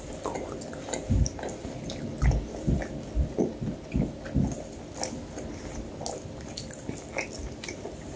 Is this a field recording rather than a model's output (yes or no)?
yes